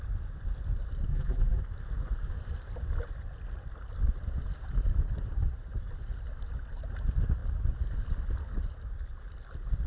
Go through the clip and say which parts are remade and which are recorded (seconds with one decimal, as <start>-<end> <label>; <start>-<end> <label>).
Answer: 0.0-1.1 recorded; 1.1-1.6 remade; 1.6-9.9 recorded